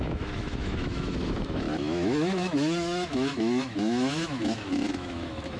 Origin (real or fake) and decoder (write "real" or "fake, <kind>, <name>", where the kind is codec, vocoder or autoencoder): fake, autoencoder, DAC-VAE